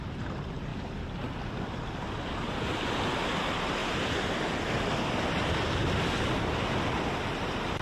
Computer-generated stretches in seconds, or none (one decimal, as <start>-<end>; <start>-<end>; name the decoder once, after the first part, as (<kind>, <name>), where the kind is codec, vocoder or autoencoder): none

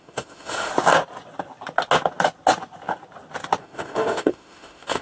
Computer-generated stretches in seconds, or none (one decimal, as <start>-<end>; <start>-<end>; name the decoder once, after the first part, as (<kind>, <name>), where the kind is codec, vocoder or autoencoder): 0.0-0.7 (autoencoder, DAC-VAE); 3.6-5.0

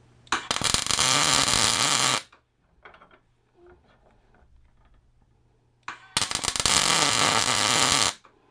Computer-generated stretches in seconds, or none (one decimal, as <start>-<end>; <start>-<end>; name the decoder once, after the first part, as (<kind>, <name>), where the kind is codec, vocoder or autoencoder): none

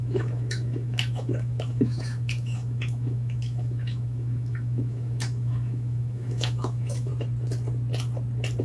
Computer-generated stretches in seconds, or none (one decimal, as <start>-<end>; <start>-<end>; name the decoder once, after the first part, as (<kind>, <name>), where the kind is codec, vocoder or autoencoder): 0.0-7.1 (autoencoder, DAC-VAE)

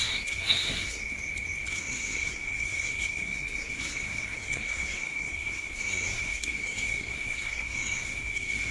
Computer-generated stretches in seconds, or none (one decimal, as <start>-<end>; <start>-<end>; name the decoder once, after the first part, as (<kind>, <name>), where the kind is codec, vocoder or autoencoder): 0.0-1.0 (codec, SNAC); 1.7-8.7